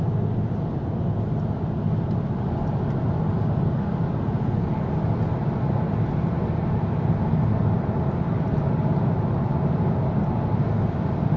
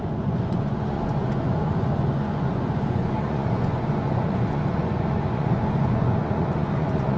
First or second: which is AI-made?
second